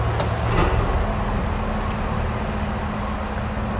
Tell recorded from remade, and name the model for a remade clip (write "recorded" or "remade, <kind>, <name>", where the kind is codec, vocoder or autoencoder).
recorded